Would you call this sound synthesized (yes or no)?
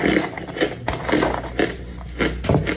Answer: no